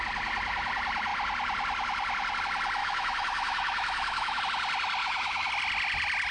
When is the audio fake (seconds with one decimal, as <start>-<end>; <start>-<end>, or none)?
2.8-4.4; 5.0-5.5